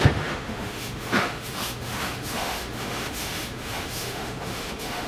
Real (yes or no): no